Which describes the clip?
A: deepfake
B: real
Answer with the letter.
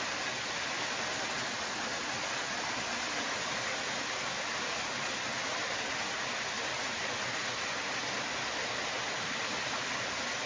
B